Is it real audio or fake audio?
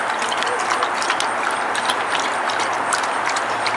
real